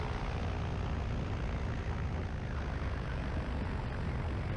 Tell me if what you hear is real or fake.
real